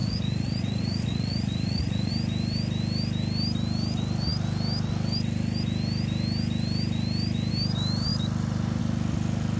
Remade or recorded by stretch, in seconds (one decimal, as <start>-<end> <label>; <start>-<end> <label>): 0.0-2.1 remade; 2.1-9.6 recorded

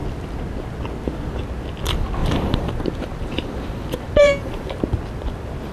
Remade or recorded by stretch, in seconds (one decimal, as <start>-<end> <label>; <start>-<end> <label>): 0.0-2.2 recorded; 2.2-4.8 remade; 4.8-5.7 recorded

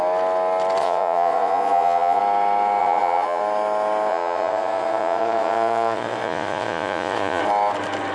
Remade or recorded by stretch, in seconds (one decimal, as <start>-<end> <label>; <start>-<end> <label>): 0.0-0.8 recorded; 0.8-2.2 remade; 2.2-2.8 recorded; 2.8-3.4 remade; 3.4-4.1 recorded; 4.1-7.4 remade; 7.4-8.1 recorded

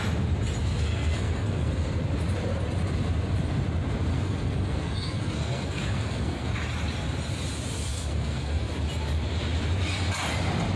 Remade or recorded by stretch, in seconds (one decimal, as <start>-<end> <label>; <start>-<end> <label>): 0.0-0.6 recorded; 0.6-2.0 remade; 2.0-4.1 recorded; 4.1-6.5 remade; 6.5-7.9 recorded; 7.9-8.7 remade; 8.7-10.8 recorded